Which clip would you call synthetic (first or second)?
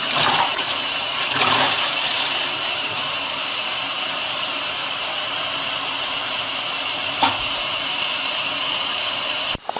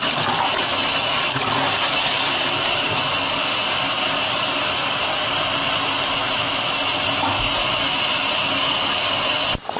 first